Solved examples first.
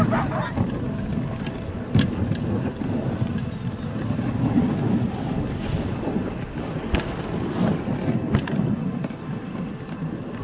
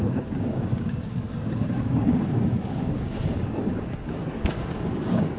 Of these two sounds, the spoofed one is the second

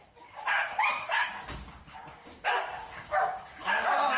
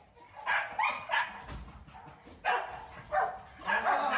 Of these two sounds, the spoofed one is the first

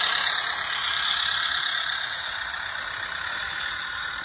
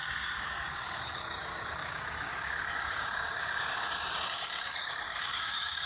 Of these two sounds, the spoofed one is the second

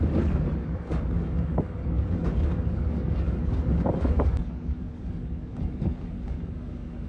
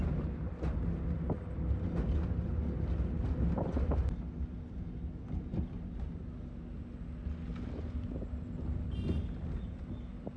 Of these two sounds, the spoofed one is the first